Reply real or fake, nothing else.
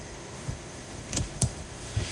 fake